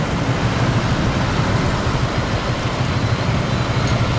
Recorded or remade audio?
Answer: recorded